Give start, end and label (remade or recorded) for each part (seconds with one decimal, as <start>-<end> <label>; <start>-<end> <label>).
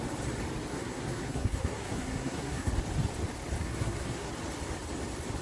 0.0-0.7 recorded; 0.7-2.7 remade; 2.7-3.6 recorded; 3.6-4.3 remade; 4.3-5.4 recorded